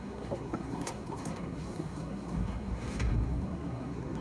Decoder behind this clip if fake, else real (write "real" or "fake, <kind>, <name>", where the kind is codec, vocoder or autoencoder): fake, codec, SNAC